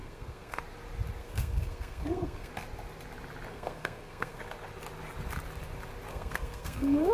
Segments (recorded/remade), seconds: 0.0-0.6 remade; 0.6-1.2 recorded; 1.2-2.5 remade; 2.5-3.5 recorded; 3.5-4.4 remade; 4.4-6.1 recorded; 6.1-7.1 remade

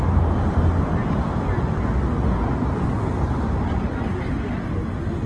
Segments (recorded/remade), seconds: 0.0-5.3 recorded